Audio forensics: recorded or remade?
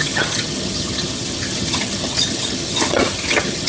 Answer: remade